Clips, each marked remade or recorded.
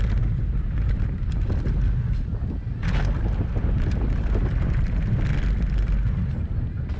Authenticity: recorded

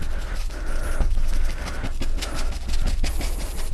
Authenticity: recorded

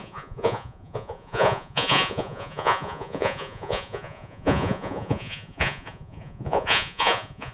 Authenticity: remade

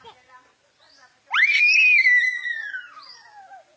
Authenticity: recorded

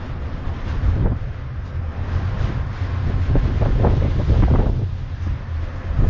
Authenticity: recorded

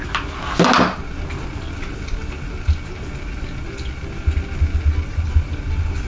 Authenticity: recorded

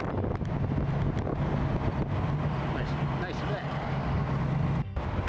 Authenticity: recorded